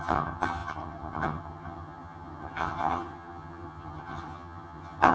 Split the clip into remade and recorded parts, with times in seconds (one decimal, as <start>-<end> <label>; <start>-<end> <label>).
0.0-5.1 remade